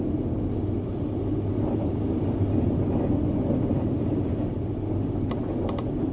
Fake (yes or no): no